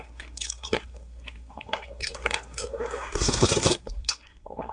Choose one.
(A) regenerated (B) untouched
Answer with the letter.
A